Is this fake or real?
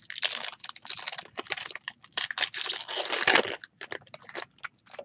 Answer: real